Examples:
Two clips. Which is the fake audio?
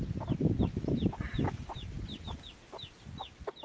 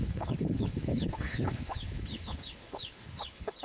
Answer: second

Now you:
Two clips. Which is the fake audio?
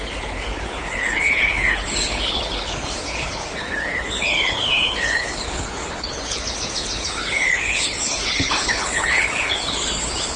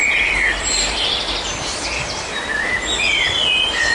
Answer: first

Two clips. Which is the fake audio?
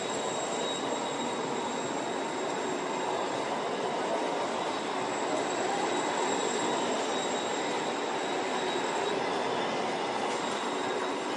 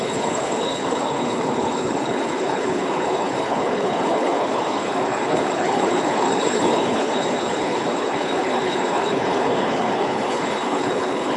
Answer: second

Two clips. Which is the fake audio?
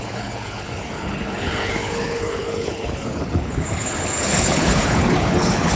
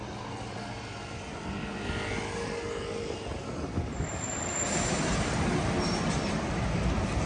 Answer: first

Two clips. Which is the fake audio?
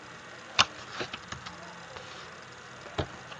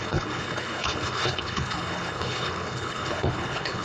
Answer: second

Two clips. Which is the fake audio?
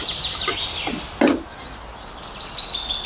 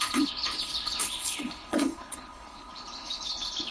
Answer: second